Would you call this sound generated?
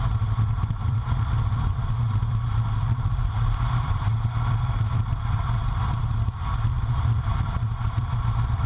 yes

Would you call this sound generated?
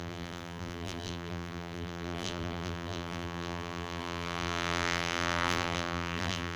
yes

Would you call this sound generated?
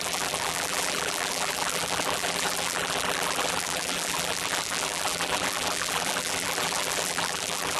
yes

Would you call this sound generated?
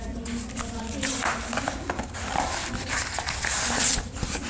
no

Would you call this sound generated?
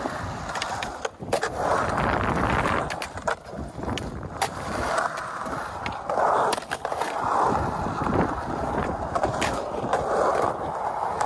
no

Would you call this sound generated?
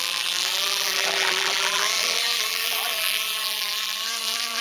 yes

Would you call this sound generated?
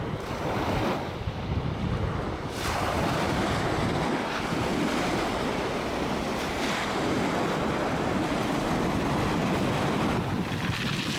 no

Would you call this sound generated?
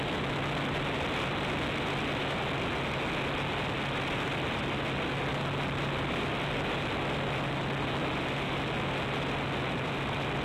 no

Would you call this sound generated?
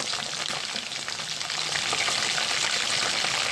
no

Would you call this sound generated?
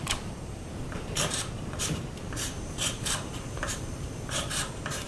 yes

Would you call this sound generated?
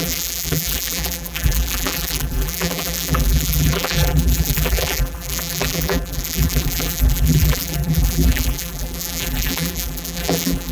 yes